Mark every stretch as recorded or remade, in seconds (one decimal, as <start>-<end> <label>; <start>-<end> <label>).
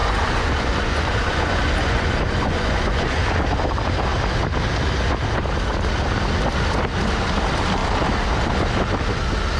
0.0-3.2 remade; 3.2-9.6 recorded